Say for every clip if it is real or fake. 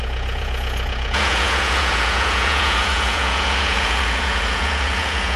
fake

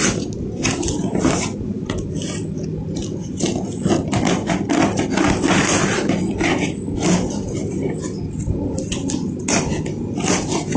real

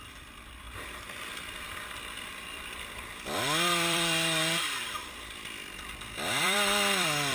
fake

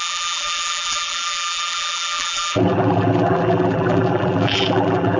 fake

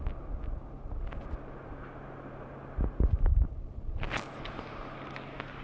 real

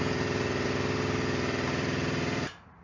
fake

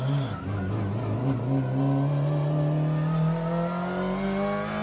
real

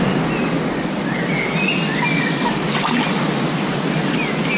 real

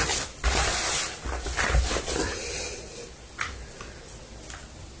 real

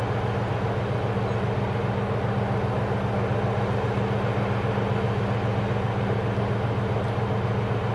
real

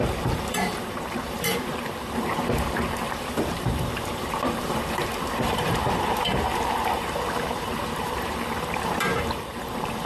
fake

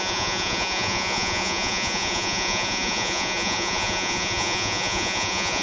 fake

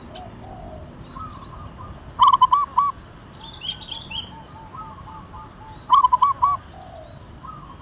real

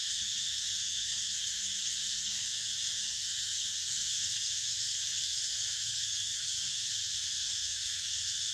fake